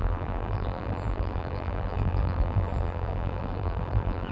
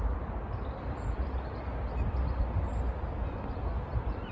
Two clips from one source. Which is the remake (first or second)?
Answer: first